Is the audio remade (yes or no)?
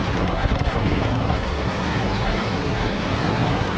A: yes